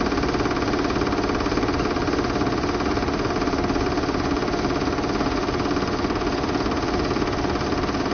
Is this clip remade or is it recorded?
recorded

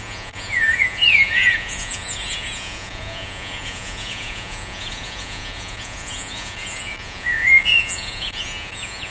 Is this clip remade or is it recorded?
remade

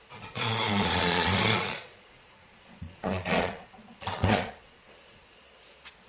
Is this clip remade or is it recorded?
remade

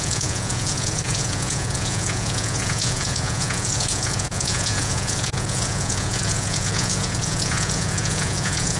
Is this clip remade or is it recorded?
remade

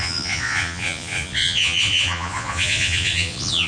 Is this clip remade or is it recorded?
remade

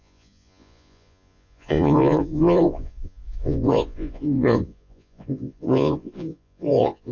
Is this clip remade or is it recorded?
remade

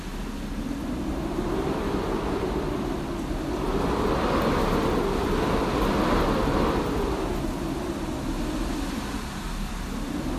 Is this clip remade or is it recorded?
recorded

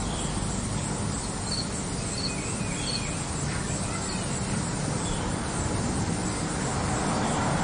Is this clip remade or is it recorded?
recorded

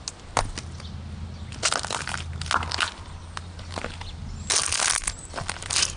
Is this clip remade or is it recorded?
recorded